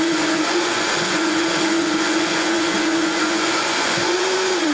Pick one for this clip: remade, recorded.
remade